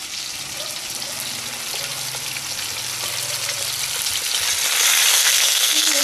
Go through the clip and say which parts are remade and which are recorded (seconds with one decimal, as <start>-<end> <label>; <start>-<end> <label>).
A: 0.0-5.1 recorded; 5.1-6.0 remade